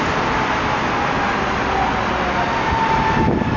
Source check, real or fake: real